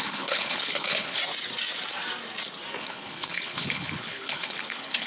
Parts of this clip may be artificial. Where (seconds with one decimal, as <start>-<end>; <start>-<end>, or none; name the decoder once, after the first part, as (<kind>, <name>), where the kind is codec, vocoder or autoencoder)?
0.0-1.2 (codec, HILCodec); 2.8-5.1